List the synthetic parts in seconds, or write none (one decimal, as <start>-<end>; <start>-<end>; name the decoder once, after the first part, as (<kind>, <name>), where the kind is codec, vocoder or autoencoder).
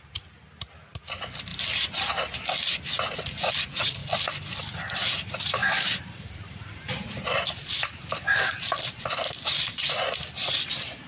5.6-9.0 (vocoder, BigVGAN v2); 10.4-11.1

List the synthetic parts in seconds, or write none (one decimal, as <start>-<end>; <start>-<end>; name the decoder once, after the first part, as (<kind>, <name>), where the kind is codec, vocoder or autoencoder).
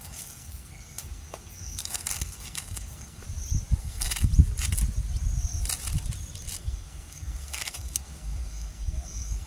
0.0-3.2 (codec, SNAC); 3.8-4.3; 6.6-9.5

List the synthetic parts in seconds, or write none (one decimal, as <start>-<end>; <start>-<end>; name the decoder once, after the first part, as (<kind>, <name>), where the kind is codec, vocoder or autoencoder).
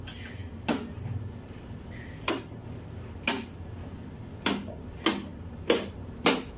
none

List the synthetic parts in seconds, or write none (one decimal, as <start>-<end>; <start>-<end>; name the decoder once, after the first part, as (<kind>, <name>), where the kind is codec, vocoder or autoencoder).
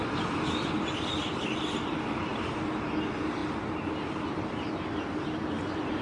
0.0-2.3 (vocoder, BigVGAN v2); 2.8-3.4; 4.8-6.0